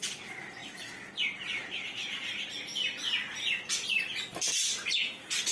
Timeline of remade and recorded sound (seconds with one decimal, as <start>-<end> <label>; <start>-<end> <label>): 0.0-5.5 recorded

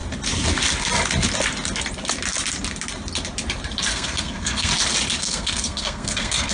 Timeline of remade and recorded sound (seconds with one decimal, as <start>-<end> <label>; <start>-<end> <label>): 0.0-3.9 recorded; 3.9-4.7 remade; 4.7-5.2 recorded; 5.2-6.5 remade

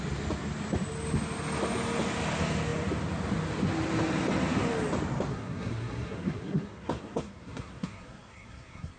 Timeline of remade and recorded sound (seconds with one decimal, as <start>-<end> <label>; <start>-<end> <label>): 0.0-5.3 recorded; 5.3-9.0 remade

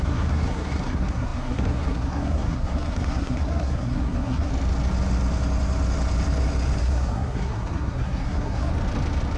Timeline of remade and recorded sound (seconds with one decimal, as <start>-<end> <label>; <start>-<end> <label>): 0.0-4.5 remade; 4.5-6.8 recorded; 6.8-8.7 remade; 8.7-9.4 recorded

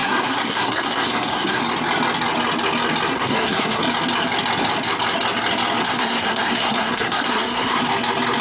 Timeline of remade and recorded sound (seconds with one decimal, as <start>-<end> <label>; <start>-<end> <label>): 0.0-1.6 remade; 1.6-3.1 recorded; 3.1-3.8 remade; 3.8-5.8 recorded; 5.8-7.8 remade; 7.8-8.4 recorded